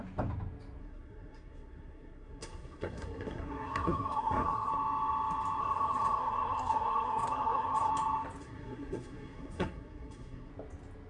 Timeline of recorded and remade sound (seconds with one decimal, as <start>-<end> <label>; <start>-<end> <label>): 0.0-0.8 recorded; 0.8-4.7 remade; 4.7-5.6 recorded; 5.6-7.9 remade; 7.9-8.4 recorded; 8.4-10.5 remade; 10.5-11.1 recorded